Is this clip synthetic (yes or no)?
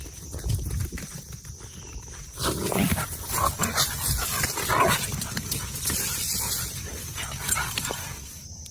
yes